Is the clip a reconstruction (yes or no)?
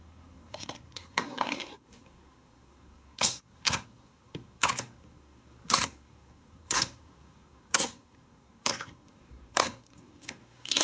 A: yes